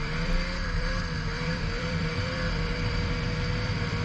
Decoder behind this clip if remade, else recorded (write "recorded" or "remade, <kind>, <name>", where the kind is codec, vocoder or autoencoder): remade, vocoder, BigVGAN v2